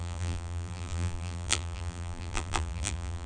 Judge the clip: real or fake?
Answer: fake